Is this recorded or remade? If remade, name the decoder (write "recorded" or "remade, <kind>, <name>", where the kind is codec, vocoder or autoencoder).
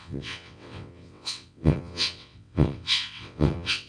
remade, vocoder, WaveNeXt